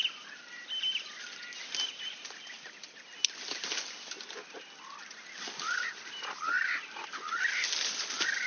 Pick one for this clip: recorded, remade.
recorded